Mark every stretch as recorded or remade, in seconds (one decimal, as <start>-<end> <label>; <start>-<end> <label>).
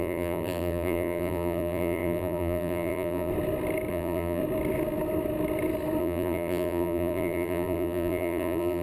0.0-3.3 remade; 3.3-3.9 recorded; 3.9-4.4 remade; 4.4-6.0 recorded; 6.0-8.8 remade